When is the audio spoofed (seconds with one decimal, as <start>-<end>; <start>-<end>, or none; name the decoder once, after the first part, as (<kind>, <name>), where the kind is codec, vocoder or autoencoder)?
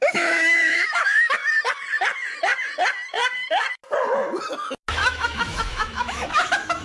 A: 0.0-1.4 (autoencoder, DAC-VAE); 4.9-6.8